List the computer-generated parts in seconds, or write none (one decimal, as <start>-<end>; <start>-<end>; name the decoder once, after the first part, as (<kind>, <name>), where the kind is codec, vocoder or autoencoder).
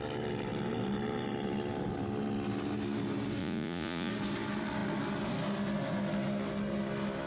3.4-4.1 (vocoder, Vocos)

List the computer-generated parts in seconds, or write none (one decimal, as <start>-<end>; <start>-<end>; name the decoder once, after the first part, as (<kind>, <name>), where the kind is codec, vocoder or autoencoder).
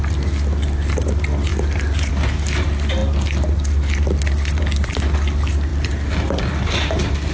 none